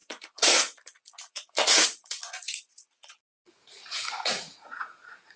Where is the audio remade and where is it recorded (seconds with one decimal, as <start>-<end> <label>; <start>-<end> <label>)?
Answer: 0.0-5.4 remade